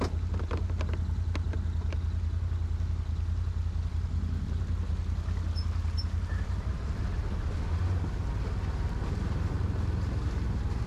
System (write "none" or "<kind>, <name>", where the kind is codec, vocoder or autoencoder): none